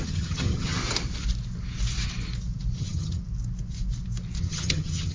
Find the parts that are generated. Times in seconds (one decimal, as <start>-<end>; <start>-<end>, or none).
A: 0.0-0.8; 2.8-3.2; 4.4-5.1